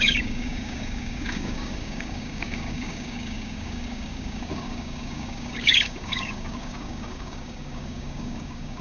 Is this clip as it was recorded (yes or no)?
no